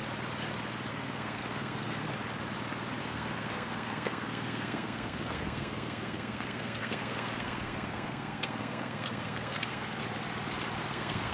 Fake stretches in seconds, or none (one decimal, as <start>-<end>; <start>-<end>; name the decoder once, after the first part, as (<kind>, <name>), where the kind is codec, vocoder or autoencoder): 0.9-2.0 (codec, SNAC); 3.0-10.0; 10.8-11.3

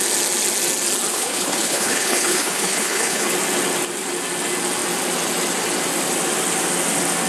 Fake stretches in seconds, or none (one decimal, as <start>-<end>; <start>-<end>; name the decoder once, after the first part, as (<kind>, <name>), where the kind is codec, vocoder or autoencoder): 1.1-3.2 (codec, HILCodec)

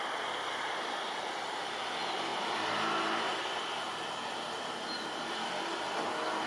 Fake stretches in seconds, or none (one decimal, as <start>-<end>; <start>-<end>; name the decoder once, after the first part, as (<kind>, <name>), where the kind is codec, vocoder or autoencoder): 2.3-3.4 (vocoder, BigVGAN v2)

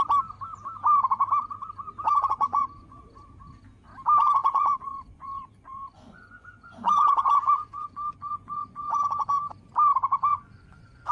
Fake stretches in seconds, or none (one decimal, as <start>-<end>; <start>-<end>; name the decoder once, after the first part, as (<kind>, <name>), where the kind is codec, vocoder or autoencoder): 2.1-3.0 (vocoder, Vocos); 4.4-9.3; 10.3-11.1